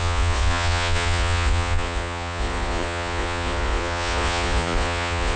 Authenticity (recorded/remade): remade